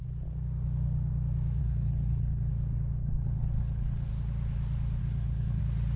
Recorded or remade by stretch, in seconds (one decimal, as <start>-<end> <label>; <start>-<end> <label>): 0.0-1.6 recorded; 1.6-2.5 remade; 2.5-3.0 recorded; 3.0-4.1 remade; 4.1-5.0 recorded; 5.0-5.6 remade; 5.6-6.0 recorded

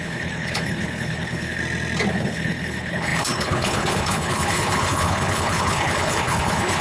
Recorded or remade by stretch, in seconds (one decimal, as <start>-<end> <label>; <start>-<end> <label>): 0.0-1.6 remade; 1.6-2.1 recorded; 2.1-6.8 remade

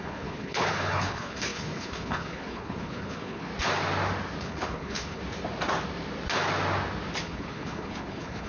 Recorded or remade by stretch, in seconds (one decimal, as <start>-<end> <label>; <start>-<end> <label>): 0.0-3.5 remade; 3.5-4.4 recorded; 4.4-5.2 remade; 5.2-7.2 recorded; 7.2-8.5 remade

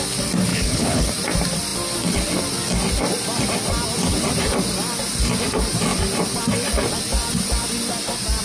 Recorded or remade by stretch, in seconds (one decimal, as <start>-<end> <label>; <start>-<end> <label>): 0.0-0.5 recorded; 0.5-1.1 remade; 1.1-8.4 recorded

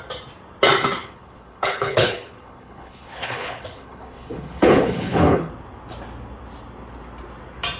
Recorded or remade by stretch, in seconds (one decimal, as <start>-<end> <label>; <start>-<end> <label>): 0.0-1.0 recorded; 1.0-5.5 remade; 5.5-7.8 recorded

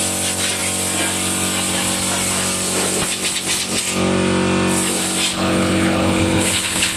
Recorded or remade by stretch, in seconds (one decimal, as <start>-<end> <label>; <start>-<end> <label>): 0.0-5.3 recorded; 5.3-7.0 remade